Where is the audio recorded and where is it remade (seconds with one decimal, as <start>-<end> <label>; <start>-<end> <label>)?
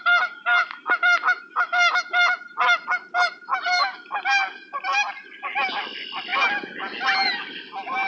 0.0-8.1 recorded